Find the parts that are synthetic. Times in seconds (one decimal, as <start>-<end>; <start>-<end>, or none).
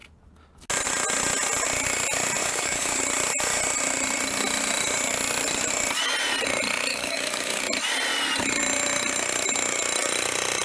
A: 2.4-3.0; 6.9-7.6